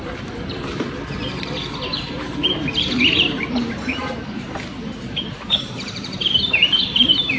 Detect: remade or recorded remade